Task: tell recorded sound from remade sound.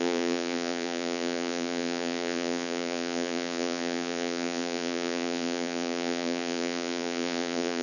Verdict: remade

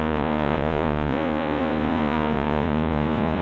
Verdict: remade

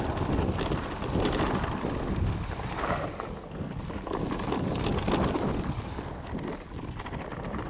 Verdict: recorded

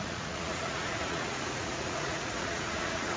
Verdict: remade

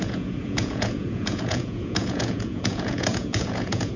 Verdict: remade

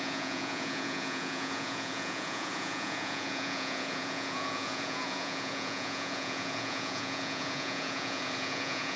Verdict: remade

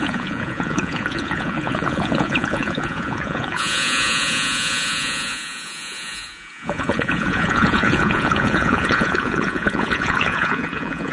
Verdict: remade